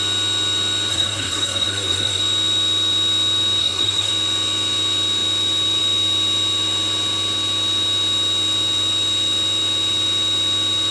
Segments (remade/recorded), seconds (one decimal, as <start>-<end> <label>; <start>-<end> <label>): 0.0-0.9 recorded; 0.9-2.2 remade; 2.2-3.6 recorded; 3.6-4.1 remade; 4.1-10.9 recorded